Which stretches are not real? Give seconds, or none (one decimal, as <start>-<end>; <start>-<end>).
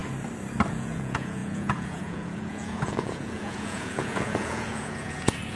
0.7-5.6